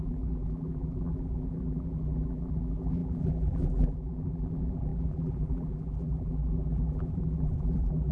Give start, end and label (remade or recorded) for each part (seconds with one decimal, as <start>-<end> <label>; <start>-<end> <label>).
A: 0.0-8.1 remade